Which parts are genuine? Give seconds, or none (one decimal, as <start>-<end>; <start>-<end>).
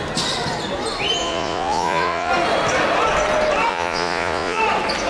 0.0-1.2; 2.3-3.7; 4.6-5.1